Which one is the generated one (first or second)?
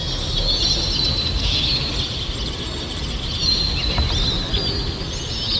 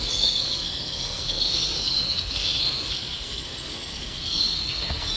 second